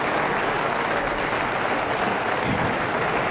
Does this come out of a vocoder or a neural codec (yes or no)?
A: no